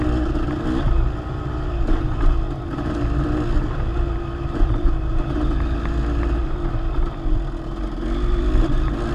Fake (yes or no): no